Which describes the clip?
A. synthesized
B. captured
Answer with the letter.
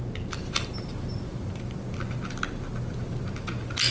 B